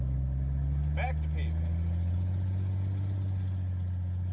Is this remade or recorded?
recorded